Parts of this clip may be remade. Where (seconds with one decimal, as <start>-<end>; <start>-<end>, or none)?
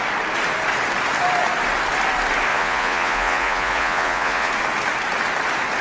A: 2.5-4.5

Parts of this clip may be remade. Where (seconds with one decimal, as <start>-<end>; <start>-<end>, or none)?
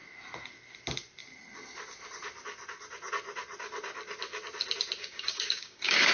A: 5.0-6.1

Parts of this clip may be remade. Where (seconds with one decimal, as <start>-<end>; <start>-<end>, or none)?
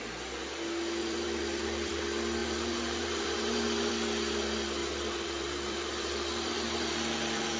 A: 1.0-2.0; 2.4-3.9; 4.8-7.6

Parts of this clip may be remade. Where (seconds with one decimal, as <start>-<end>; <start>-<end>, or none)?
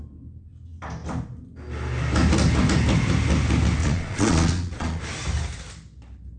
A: 3.8-5.0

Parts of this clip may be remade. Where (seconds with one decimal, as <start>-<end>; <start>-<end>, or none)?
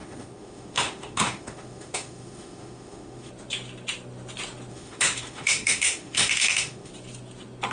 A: 0.0-3.3; 4.7-6.9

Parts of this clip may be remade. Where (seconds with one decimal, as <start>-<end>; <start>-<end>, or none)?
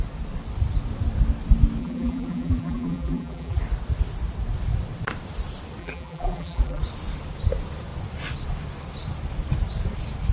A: 1.8-3.6; 5.8-6.8